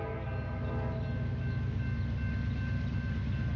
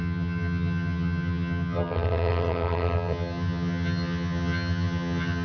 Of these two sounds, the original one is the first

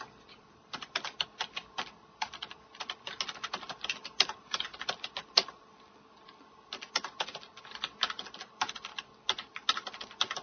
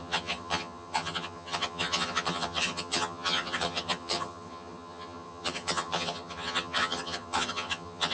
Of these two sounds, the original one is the first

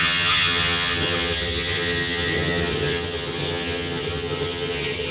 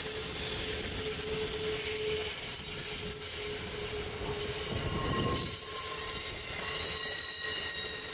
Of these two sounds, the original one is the second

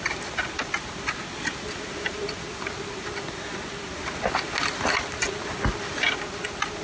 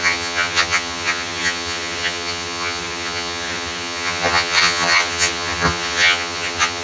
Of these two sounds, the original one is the first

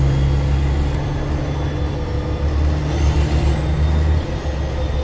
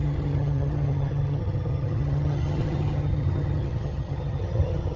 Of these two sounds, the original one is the first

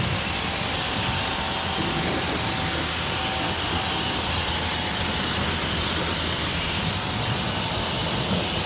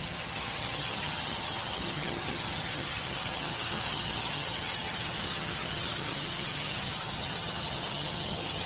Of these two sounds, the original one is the first